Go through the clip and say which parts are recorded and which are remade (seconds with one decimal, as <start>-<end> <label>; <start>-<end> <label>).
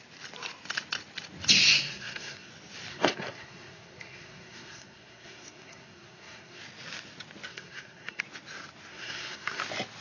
0.0-1.8 recorded; 1.8-2.5 remade; 2.5-2.9 recorded; 2.9-6.6 remade; 6.6-7.5 recorded; 7.5-8.2 remade; 8.2-8.9 recorded; 8.9-9.6 remade; 9.6-10.0 recorded